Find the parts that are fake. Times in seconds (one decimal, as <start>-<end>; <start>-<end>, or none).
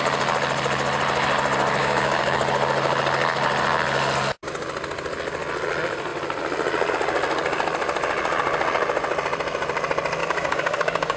1.8-2.4; 10.2-11.2